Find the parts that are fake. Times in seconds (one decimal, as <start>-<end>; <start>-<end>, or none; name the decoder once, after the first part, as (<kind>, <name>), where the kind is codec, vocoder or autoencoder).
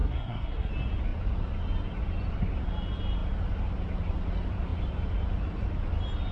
0.0-0.7 (codec, SNAC)